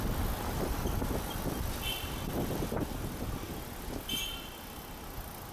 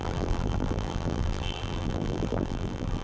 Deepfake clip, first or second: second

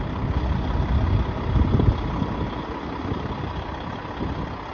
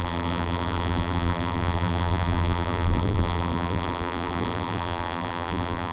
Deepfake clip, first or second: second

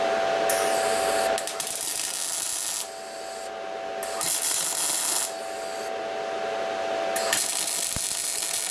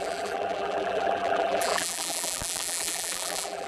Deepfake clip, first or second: second